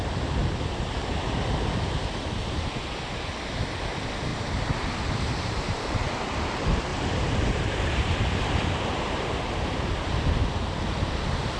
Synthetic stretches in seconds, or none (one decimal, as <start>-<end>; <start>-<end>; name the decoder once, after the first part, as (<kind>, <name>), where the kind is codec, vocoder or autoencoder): 2.4-2.9 (vocoder, BigVGAN v2); 4.3-5.9; 6.9-9.4